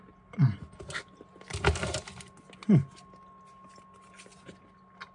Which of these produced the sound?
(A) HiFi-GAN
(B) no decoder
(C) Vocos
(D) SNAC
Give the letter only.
B